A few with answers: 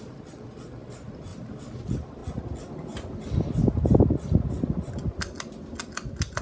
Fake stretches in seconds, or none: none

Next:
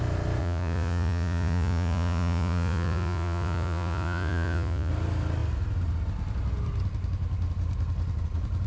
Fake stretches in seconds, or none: 0.4-4.9 (vocoder, Vocos)

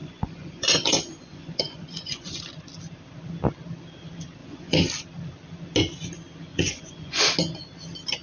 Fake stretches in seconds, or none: 0.0-2.4 (vocoder, Vocos); 4.4-4.9; 6.5-7.2

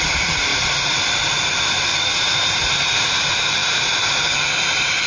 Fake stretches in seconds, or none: 0.5-1.0 (vocoder, Vocos)

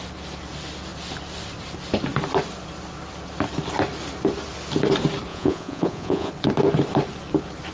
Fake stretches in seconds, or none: 5.3-6.3 (vocoder, Vocos)